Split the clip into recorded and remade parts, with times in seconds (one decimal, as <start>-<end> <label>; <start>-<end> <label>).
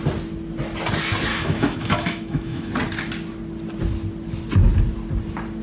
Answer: 0.0-1.3 recorded; 1.3-2.7 remade; 2.7-5.6 recorded